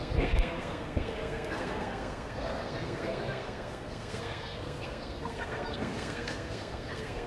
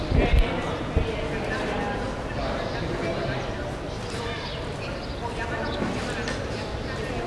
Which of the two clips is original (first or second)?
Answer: second